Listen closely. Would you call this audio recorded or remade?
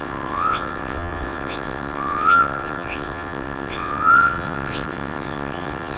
remade